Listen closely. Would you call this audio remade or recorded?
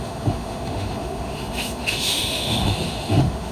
remade